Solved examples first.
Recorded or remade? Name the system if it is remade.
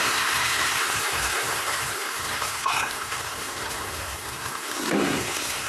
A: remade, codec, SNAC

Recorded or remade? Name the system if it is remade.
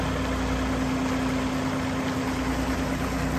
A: recorded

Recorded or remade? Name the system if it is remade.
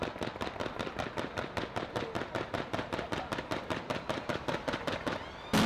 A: recorded